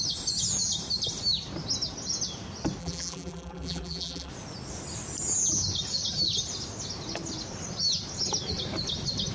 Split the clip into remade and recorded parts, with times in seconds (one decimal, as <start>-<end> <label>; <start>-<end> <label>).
0.0-2.8 recorded; 2.8-4.3 remade; 4.3-9.3 recorded